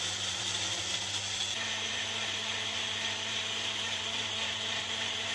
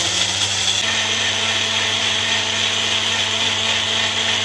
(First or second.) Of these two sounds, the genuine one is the second